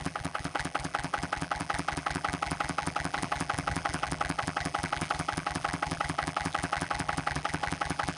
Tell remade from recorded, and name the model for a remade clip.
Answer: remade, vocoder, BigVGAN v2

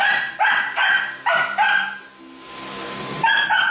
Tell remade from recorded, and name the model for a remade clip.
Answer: recorded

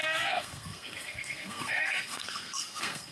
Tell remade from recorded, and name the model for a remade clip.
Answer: remade, codec, SNAC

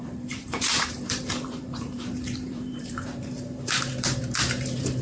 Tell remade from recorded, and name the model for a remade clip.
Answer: remade, vocoder, BigVGAN v2